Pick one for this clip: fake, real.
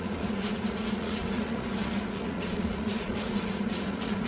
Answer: fake